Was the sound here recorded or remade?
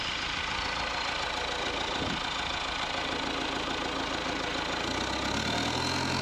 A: recorded